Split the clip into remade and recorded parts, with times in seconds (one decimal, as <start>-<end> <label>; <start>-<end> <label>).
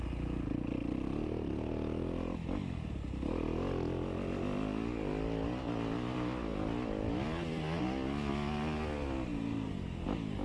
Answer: 0.0-10.4 recorded